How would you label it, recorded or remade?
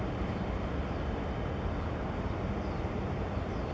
recorded